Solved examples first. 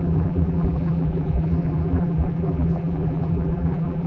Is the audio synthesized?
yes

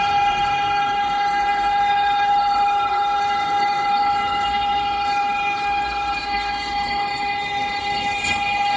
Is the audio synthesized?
yes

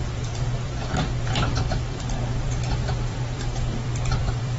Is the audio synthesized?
yes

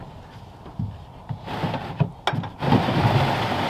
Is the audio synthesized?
no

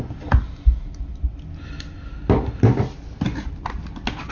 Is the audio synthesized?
no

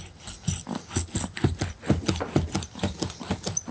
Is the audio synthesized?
no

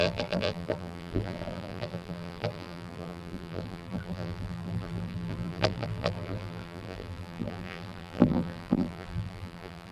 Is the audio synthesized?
yes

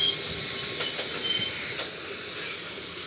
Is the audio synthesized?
no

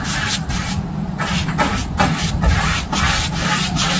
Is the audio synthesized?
yes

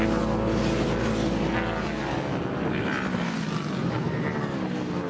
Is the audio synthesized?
no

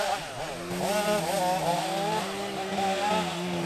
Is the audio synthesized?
no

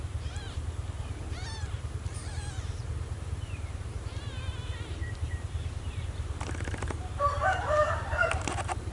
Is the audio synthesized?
yes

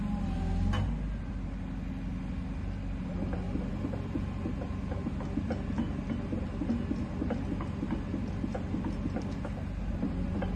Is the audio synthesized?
no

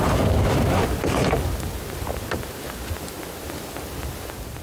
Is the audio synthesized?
no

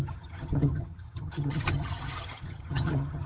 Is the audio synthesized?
yes